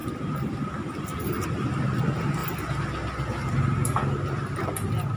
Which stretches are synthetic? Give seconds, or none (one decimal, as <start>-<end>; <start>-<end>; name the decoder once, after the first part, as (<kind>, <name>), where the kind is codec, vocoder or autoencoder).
none